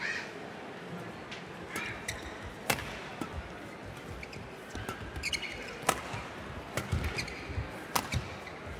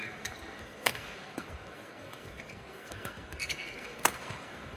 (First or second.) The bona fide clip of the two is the first